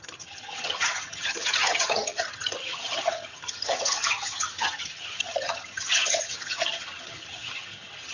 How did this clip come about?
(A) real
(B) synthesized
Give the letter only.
B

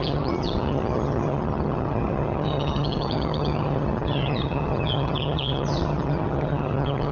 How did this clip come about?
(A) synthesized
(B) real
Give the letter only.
A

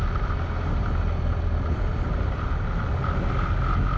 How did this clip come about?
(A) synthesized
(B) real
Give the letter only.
B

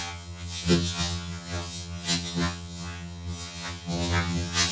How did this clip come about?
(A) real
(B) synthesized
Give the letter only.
B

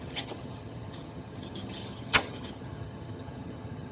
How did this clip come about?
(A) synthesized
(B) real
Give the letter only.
A